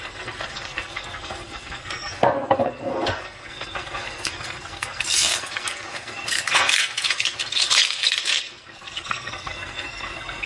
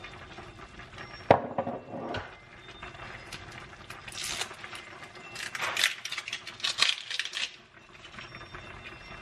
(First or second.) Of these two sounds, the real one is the second